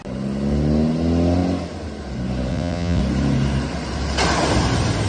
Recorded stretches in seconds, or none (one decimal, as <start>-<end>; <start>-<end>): 0.0-2.5; 3.0-5.1